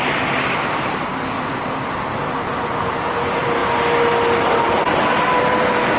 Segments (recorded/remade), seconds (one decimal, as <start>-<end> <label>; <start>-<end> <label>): 0.0-3.6 remade; 3.6-4.6 recorded; 4.6-6.0 remade